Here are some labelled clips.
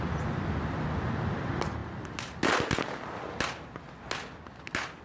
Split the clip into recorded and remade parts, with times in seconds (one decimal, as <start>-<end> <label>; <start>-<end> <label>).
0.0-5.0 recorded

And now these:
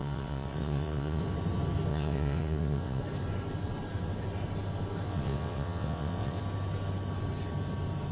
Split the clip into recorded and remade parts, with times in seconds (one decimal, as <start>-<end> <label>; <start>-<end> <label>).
0.0-1.2 remade; 1.2-1.9 recorded; 1.9-3.0 remade; 3.0-5.1 recorded; 5.1-6.4 remade; 6.4-8.1 recorded

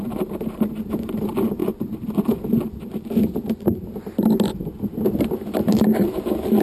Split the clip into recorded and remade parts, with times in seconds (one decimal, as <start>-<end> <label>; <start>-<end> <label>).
0.0-6.6 recorded